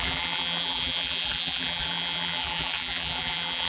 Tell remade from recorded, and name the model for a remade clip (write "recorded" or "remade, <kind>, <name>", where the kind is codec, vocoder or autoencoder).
remade, vocoder, BigVGAN v2